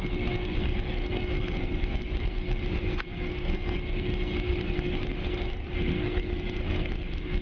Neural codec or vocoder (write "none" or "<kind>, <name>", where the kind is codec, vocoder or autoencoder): codec, SNAC